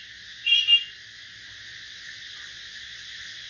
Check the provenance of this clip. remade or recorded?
recorded